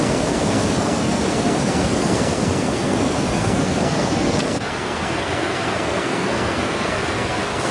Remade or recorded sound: remade